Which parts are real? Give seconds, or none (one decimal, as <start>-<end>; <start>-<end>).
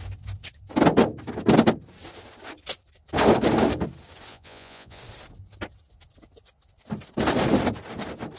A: 0.0-4.3; 5.0-8.4